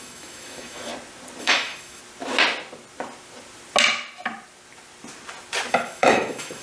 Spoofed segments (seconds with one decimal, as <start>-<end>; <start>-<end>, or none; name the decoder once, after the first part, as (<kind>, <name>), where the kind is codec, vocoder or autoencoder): 0.0-0.9 (autoencoder, DAC-VAE); 1.4-2.0; 5.7-6.6